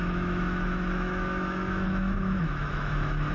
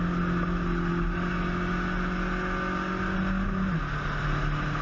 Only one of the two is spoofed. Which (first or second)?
first